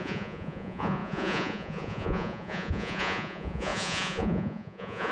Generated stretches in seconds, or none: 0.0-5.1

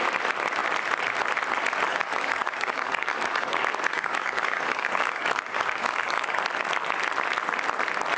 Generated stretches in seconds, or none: 1.9-6.4